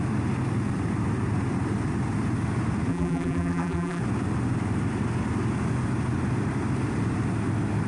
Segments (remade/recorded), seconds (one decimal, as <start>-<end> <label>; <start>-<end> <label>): 0.0-2.9 recorded; 2.9-4.0 remade; 4.0-7.9 recorded